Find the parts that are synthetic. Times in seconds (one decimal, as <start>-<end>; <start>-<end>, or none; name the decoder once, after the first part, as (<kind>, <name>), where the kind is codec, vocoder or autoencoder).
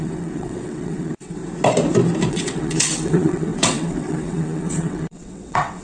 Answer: 0.0-1.4 (vocoder, WaveNeXt); 2.3-5.8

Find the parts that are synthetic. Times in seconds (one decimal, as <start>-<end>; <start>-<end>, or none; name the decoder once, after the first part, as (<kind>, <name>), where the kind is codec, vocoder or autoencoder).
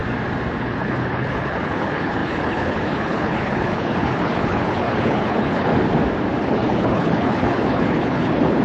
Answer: 0.6-5.7 (codec, HILCodec); 6.4-8.6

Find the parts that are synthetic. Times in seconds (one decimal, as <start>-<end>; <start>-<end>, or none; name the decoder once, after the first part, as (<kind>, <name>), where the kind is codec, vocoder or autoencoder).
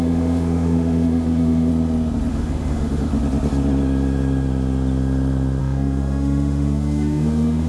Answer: 0.0-1.7 (autoencoder, DAC-VAE); 2.3-3.1; 5.6-7.7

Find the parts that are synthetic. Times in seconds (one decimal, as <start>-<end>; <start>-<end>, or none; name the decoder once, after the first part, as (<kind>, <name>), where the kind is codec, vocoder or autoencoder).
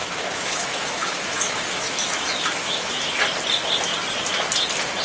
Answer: 0.0-3.0 (autoencoder, DAC-VAE)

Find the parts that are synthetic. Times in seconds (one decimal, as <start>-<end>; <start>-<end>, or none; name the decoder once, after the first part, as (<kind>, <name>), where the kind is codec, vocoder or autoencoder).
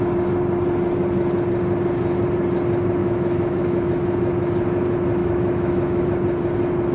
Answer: 3.0-3.9 (autoencoder, DAC-VAE); 5.2-6.0